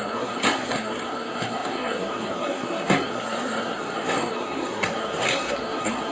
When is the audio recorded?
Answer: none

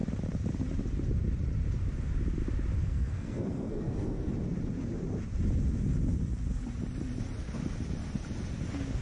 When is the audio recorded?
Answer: 0.0-2.8; 4.3-9.0